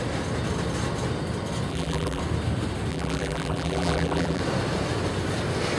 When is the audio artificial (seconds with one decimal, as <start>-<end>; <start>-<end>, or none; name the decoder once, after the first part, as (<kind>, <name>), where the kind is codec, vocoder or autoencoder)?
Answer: 1.7-2.2 (vocoder, BigVGAN v2); 2.9-4.4